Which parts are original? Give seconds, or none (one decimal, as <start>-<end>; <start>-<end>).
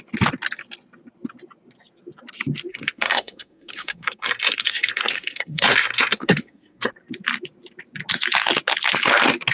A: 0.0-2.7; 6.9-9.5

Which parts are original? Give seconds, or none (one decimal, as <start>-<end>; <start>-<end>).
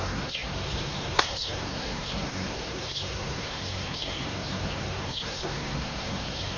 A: none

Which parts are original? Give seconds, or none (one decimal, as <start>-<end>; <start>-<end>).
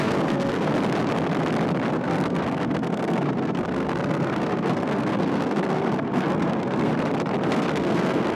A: 0.7-1.9; 6.9-7.5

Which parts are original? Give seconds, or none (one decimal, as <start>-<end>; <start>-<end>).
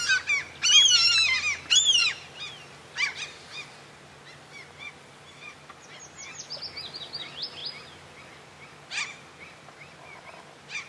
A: 0.0-10.9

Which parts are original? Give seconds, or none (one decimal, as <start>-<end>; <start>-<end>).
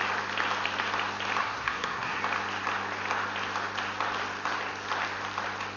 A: 0.0-1.4; 2.2-5.8